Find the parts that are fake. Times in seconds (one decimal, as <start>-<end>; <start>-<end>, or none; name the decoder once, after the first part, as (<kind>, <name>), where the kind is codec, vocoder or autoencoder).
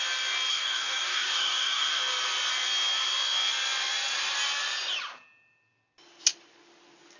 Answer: 0.5-2.0 (codec, DAC)